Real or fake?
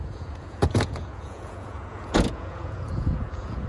fake